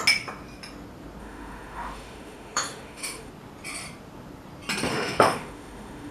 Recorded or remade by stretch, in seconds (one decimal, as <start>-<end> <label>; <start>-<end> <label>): 0.0-1.2 recorded; 1.2-3.3 remade; 3.3-4.9 recorded; 4.9-6.1 remade